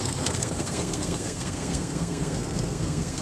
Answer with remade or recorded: remade